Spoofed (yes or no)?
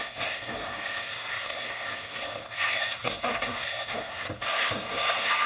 yes